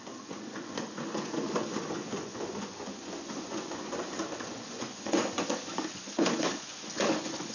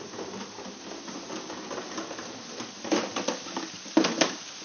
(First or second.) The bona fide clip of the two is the second